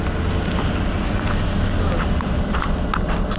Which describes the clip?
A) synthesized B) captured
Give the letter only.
B